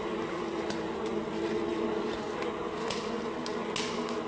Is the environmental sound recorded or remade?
recorded